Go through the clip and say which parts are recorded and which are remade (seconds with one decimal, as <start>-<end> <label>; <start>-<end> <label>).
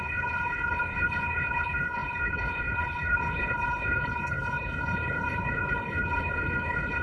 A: 0.0-7.0 remade